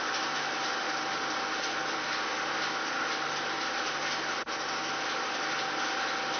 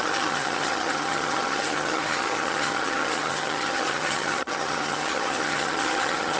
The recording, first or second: first